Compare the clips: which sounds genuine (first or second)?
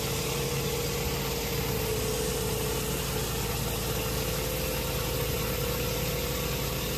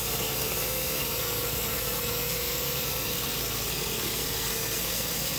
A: first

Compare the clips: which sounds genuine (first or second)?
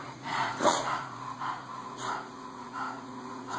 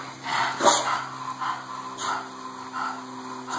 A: second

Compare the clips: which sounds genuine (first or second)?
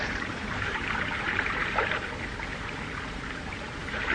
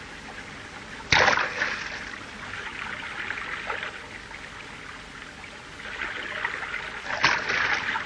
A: second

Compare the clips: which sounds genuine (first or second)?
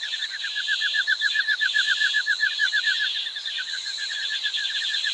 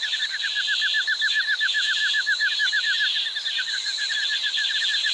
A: second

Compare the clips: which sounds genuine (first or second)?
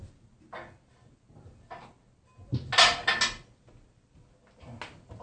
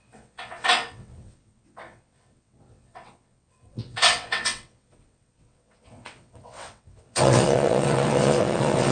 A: first